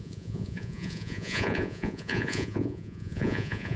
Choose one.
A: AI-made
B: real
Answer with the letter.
A